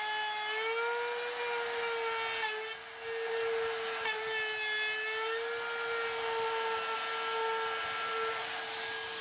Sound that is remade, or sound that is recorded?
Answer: recorded